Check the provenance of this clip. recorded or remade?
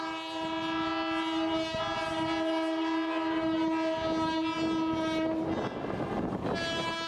recorded